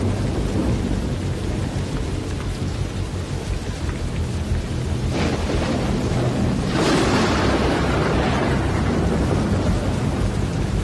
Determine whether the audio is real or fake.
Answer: real